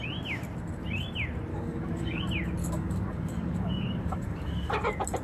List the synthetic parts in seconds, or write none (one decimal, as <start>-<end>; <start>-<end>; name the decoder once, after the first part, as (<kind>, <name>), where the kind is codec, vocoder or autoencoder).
1.5-2.2 (codec, DAC); 2.6-4.7